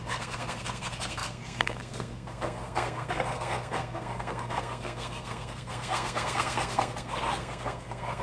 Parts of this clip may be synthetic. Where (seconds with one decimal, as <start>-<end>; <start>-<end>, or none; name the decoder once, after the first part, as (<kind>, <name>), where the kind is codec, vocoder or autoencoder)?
0.0-8.2 (codec, SNAC)